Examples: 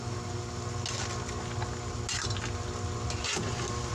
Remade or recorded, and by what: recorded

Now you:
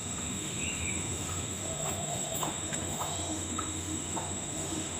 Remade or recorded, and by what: remade, autoencoder, DAC-VAE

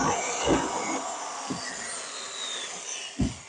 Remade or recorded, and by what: recorded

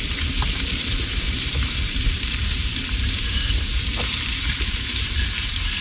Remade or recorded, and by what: remade, vocoder, BigVGAN v2